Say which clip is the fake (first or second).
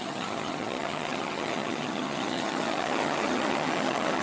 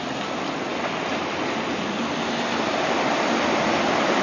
first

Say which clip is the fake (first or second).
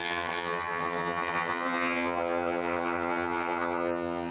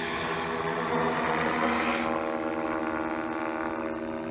first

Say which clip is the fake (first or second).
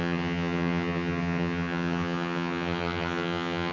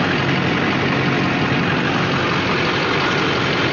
first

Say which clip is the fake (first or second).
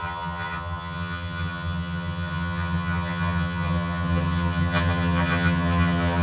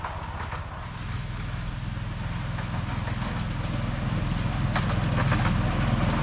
first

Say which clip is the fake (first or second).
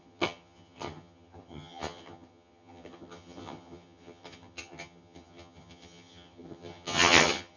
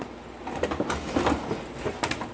first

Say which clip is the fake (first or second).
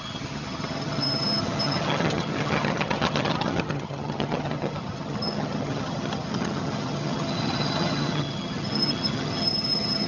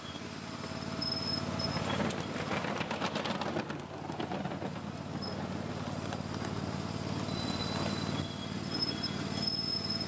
first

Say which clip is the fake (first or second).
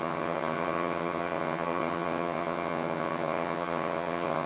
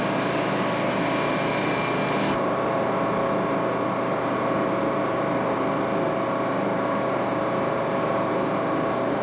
first